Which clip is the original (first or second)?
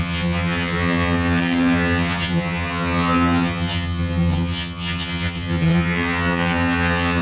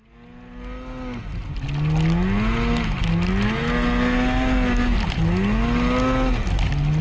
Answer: second